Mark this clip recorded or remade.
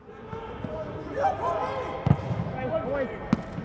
recorded